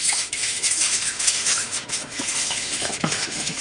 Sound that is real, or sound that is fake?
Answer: fake